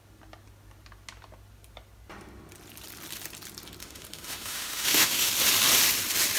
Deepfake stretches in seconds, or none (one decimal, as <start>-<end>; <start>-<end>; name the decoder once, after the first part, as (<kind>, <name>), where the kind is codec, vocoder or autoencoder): 3.8-5.3 (autoencoder, DAC-VAE)